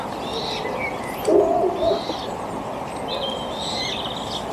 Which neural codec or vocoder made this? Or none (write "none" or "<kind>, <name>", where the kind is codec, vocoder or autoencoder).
none